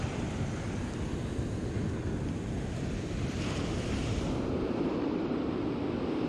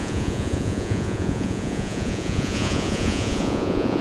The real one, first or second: first